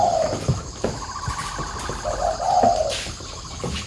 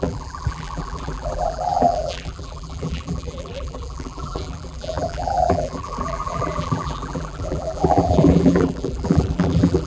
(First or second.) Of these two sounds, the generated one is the second